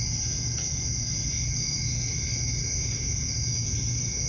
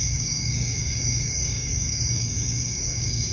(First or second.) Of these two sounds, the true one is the first